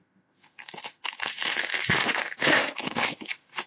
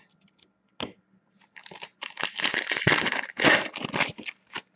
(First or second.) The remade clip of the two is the first